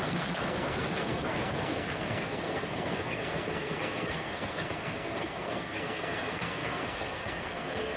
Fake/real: fake